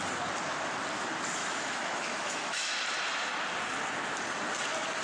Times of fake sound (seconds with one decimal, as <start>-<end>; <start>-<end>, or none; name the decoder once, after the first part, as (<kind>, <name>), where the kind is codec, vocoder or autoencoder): 1.4-2.7 (autoencoder, DAC-VAE)